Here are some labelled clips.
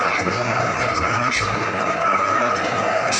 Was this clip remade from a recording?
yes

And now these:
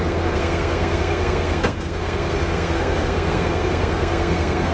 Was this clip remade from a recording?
yes